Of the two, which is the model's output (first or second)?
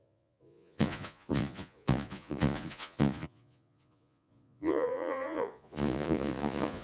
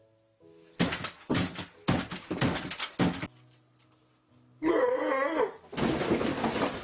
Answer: first